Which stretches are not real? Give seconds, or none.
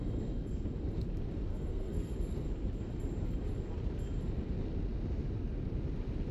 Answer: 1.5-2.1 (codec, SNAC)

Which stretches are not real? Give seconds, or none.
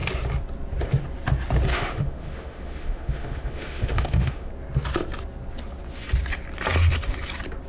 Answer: 1.7-4.5 (autoencoder, DAC-VAE)